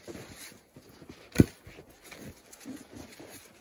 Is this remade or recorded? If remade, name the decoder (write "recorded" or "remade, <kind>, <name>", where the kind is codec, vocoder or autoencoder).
recorded